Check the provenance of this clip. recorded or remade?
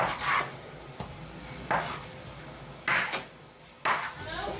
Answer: recorded